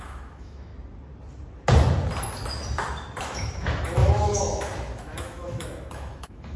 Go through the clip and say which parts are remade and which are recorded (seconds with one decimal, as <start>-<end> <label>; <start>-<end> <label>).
0.0-0.7 remade; 0.7-3.2 recorded; 3.2-6.6 remade